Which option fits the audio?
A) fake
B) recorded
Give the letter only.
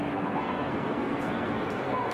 A